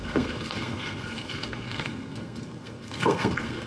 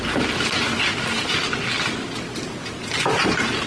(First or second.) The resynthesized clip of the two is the first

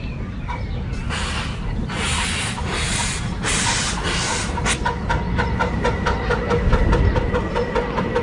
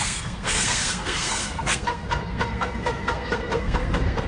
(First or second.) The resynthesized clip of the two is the second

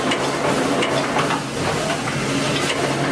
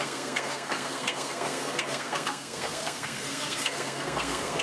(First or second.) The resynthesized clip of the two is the second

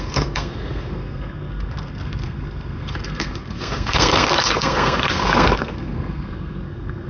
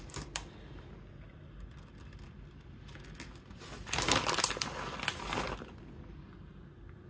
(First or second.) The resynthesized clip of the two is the first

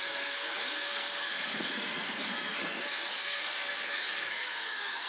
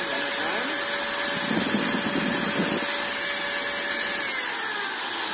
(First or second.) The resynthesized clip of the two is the first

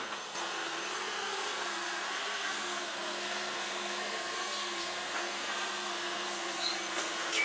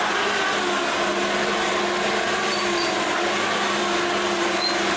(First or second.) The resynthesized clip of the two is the first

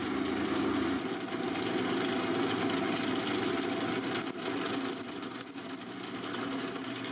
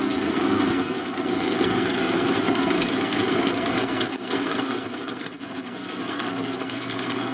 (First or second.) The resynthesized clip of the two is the second